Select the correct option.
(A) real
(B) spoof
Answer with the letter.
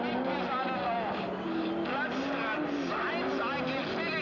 A